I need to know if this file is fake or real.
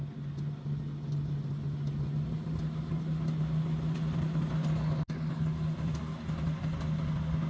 real